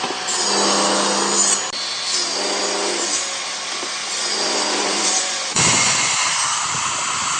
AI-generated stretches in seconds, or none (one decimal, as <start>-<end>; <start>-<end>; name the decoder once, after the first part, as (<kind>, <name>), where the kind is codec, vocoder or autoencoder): 4.0-6.3 (vocoder, Vocos)